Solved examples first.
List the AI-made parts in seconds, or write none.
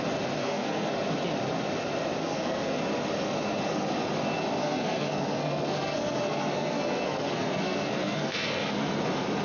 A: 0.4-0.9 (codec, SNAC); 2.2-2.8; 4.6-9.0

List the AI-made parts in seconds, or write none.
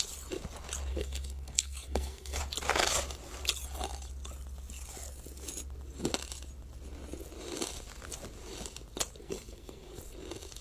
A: 0.9-2.4 (codec, SNAC); 9.2-10.0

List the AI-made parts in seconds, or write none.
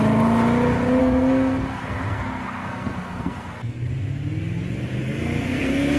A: 1.0-3.9 (codec, SNAC); 5.0-6.0